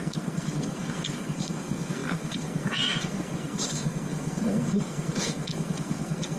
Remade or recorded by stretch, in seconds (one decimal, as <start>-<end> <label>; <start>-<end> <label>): 0.0-6.4 remade